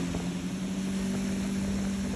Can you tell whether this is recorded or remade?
recorded